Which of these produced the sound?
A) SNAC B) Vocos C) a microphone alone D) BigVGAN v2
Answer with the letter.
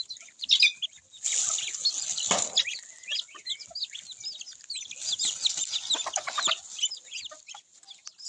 C